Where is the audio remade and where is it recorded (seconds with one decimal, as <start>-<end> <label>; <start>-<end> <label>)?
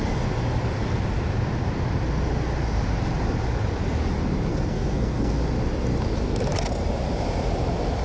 0.0-4.5 recorded; 4.5-5.4 remade; 5.4-8.0 recorded